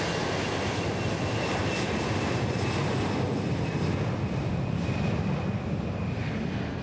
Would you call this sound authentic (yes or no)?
yes